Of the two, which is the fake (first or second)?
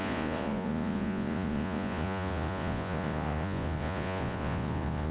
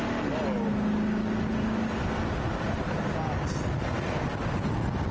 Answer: first